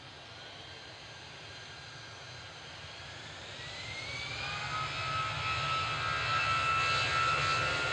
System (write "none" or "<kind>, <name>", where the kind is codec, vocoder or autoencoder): none